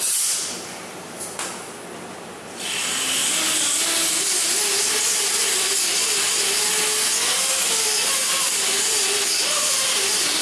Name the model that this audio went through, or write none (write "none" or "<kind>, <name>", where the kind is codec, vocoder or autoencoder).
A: none